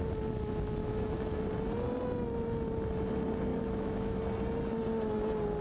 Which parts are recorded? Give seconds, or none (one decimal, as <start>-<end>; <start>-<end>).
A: 0.0-0.8; 1.4-3.5; 4.2-5.6